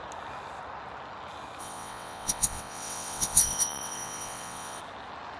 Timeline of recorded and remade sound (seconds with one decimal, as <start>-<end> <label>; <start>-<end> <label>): 0.0-1.6 recorded; 1.6-4.8 remade; 4.8-5.4 recorded